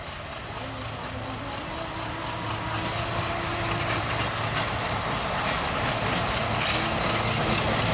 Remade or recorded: recorded